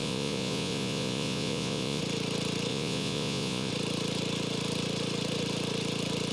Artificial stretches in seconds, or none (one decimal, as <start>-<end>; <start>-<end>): 0.0-2.0; 2.7-3.7